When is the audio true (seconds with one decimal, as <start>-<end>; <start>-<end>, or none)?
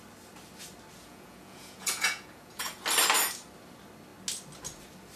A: 0.0-1.0; 2.7-5.2